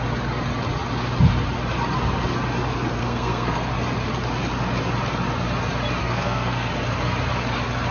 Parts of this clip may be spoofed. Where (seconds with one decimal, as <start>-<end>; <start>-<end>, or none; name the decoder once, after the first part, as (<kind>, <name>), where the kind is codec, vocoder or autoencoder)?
3.0-3.7 (codec, SNAC); 6.0-6.7